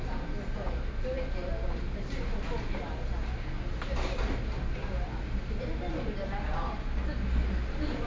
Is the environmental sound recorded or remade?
recorded